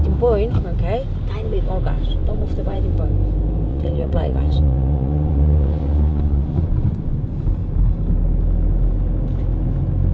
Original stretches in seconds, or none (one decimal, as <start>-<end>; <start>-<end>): 0.0-2.2; 3.1-3.7; 7.2-10.1